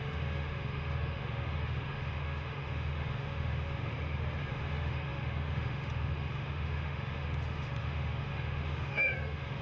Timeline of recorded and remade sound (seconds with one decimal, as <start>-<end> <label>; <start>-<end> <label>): 0.0-3.9 remade; 3.9-4.5 recorded; 4.5-9.6 remade